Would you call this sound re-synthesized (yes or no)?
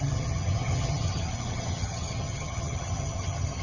yes